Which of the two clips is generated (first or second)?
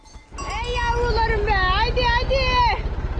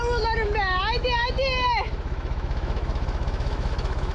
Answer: second